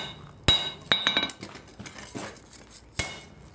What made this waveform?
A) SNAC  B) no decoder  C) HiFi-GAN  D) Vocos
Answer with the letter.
B